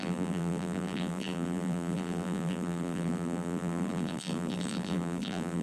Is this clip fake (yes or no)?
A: yes